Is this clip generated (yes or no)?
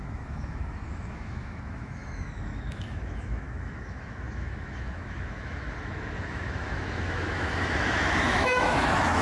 yes